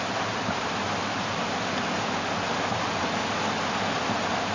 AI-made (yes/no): no